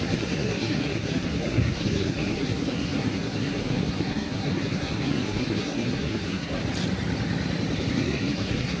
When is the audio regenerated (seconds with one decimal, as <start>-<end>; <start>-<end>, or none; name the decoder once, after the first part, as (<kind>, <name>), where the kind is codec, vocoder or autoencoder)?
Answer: 0.0-6.6 (codec, SNAC); 7.9-8.8